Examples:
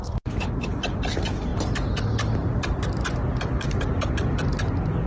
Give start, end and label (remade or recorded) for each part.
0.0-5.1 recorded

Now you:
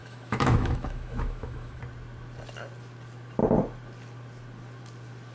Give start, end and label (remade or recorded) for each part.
0.0-1.8 remade; 1.8-5.3 recorded

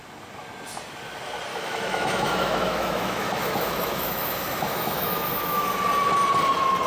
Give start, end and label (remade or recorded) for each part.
0.0-1.5 recorded; 1.5-5.6 remade; 5.6-6.9 recorded

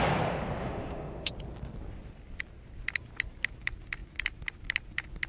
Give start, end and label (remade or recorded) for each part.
0.0-0.6 recorded; 0.6-1.3 remade; 1.3-5.3 recorded

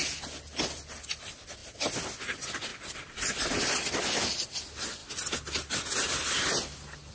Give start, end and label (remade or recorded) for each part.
0.0-7.1 recorded

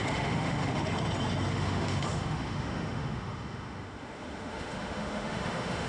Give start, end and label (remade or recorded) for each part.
0.0-0.8 remade; 0.8-1.5 recorded; 1.5-5.9 remade

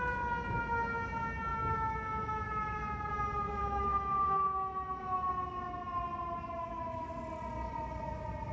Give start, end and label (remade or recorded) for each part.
0.0-1.5 recorded; 1.5-3.1 remade; 3.1-3.6 recorded; 3.6-5.3 remade; 5.3-6.6 recorded; 6.6-7.2 remade; 7.2-8.5 recorded

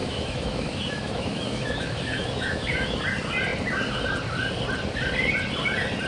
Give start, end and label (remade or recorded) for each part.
0.0-3.0 remade; 3.0-6.1 recorded